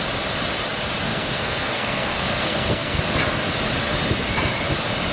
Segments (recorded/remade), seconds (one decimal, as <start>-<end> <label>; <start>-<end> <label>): 0.0-1.1 recorded; 1.1-3.0 remade; 3.0-5.1 recorded